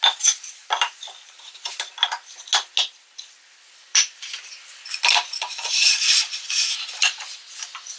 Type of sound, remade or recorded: recorded